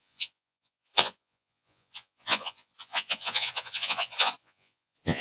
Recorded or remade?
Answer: remade